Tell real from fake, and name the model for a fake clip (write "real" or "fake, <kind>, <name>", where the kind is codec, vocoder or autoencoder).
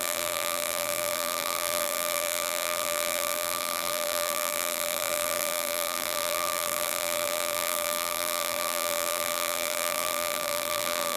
fake, vocoder, BigVGAN v2